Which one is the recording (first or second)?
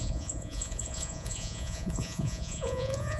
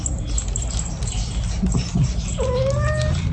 second